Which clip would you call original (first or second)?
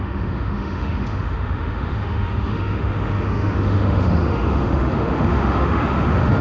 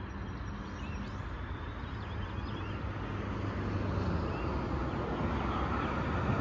second